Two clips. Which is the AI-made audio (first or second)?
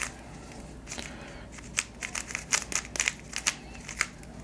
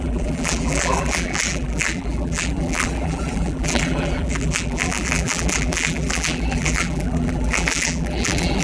second